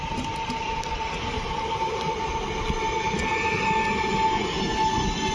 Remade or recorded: recorded